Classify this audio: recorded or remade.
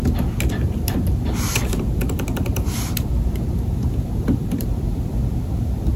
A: remade